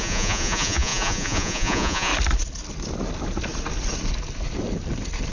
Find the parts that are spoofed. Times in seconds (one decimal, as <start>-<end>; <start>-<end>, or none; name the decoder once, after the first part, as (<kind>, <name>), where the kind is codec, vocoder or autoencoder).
0.0-2.1 (vocoder, Vocos)